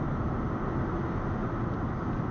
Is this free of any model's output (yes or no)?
yes